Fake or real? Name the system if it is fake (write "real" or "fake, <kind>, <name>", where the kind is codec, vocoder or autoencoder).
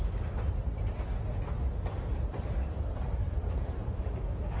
real